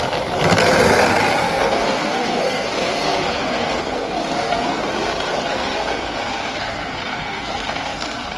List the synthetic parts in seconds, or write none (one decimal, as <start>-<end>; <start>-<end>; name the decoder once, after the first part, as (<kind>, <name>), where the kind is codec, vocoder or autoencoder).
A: 1.4-4.8 (codec, SNAC); 5.3-8.4